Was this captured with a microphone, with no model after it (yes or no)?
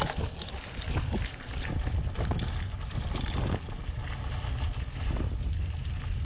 yes